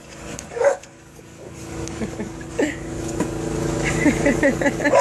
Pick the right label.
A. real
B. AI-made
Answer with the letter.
B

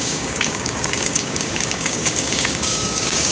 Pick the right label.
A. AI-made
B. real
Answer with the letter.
A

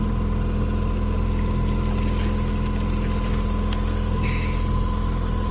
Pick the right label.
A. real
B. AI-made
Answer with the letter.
A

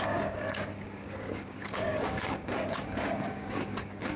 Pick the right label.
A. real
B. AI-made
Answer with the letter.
B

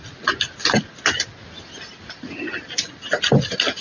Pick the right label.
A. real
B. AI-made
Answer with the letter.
A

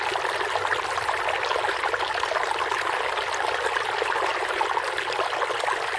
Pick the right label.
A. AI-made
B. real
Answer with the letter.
B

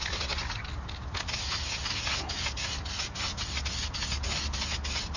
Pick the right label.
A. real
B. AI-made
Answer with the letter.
A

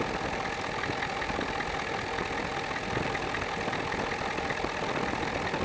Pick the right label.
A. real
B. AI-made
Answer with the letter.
A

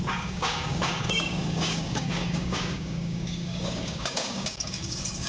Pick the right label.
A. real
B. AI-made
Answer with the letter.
B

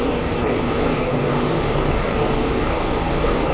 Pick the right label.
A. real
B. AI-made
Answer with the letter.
B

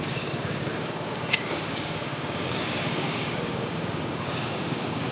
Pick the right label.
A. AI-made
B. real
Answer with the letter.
A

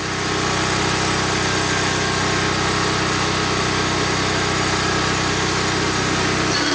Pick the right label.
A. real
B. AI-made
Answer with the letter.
A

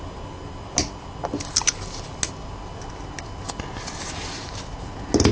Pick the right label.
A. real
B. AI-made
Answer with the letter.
A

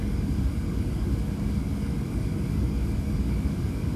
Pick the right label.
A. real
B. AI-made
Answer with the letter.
B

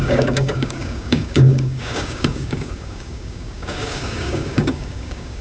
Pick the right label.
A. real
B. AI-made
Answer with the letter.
B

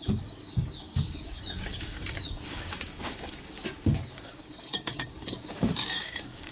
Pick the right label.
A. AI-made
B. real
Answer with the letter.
A